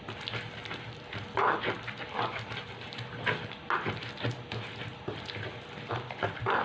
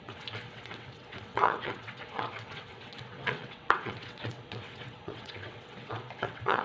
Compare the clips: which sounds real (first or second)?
first